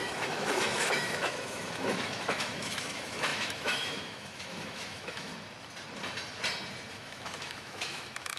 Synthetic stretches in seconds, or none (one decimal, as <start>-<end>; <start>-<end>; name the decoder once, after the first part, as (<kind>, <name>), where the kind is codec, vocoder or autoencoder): 0.0-5.3 (autoencoder, DAC-VAE); 6.9-8.4